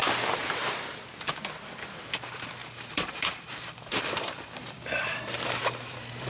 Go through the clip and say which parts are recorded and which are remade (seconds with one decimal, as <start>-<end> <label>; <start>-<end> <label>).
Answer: 0.0-2.6 recorded; 2.6-6.3 remade